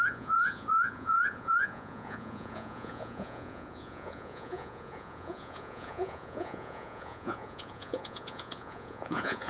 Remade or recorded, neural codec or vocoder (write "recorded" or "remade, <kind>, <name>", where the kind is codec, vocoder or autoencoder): remade, vocoder, Vocos